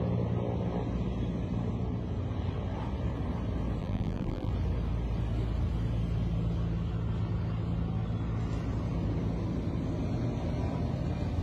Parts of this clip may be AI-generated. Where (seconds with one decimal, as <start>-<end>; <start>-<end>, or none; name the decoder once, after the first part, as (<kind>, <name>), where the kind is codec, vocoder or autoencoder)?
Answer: 3.8-4.5 (vocoder, BigVGAN v2)